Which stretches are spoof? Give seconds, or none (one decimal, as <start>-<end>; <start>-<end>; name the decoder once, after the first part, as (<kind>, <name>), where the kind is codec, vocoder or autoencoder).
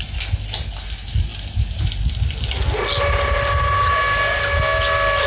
none